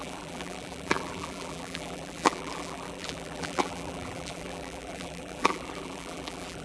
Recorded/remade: remade